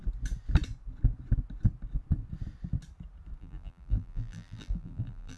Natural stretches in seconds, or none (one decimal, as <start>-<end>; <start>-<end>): 0.0-3.4